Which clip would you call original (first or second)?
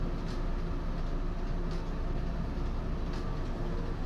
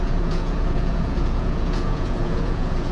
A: first